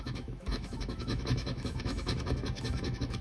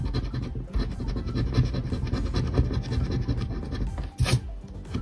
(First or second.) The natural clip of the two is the second